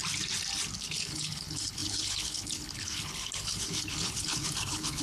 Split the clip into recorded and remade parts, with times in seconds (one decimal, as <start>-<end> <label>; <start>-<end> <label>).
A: 0.0-0.8 recorded; 0.8-5.0 remade